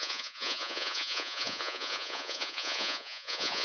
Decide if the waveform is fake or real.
fake